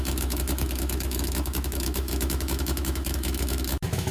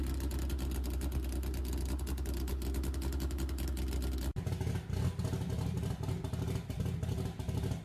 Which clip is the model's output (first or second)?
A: first